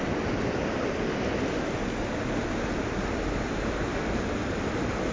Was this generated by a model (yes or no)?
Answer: no